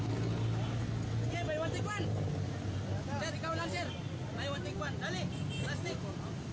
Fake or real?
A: real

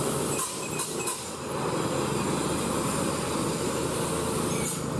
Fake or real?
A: real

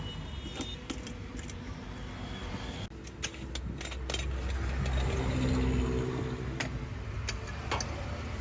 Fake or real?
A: real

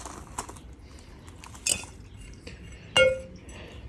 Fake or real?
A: real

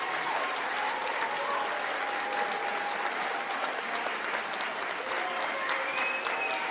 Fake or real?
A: real